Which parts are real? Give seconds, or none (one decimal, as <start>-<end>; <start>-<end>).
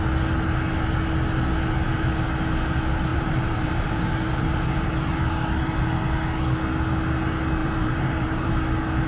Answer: 0.0-3.1; 4.9-7.6; 8.5-9.1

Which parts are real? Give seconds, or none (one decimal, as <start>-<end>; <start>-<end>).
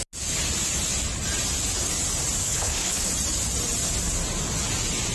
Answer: 0.0-2.4; 3.1-5.1